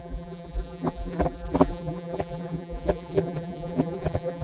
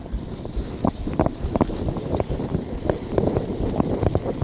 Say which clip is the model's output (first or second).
first